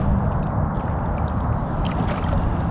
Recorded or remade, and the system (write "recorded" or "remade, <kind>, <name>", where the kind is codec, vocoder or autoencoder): recorded